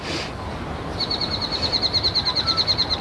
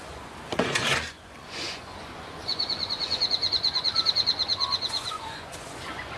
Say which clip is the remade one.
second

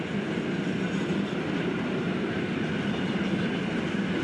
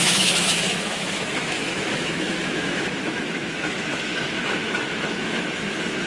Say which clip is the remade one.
second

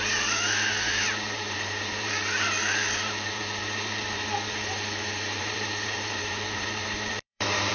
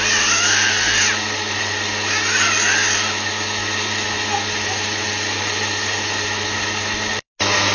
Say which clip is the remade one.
first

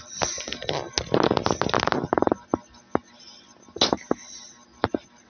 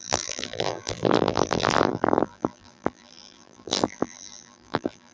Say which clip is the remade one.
second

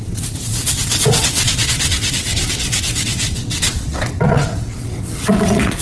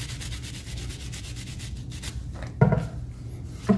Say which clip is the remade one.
first